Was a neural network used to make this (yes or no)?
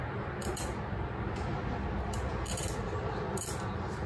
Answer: no